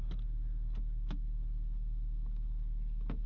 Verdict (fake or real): real